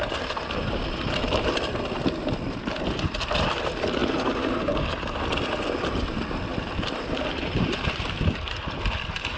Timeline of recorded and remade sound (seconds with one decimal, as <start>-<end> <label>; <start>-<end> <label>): 0.0-1.1 remade; 1.1-6.5 recorded; 6.5-8.2 remade; 8.2-9.4 recorded